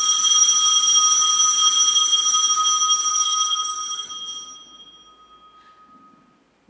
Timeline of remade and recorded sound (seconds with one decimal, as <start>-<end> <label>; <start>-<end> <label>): 0.0-3.1 recorded; 3.1-4.1 remade; 4.1-6.7 recorded